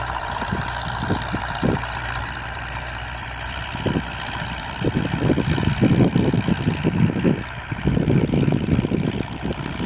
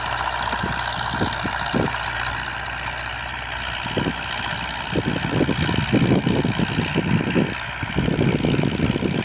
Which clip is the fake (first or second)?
first